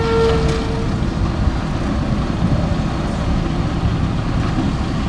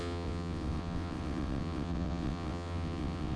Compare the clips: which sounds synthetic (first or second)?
second